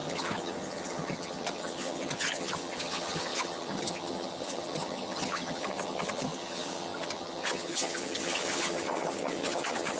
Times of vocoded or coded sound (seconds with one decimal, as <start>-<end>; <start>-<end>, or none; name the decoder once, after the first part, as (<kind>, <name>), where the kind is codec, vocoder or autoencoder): 0.0-10.0 (vocoder, HiFi-GAN)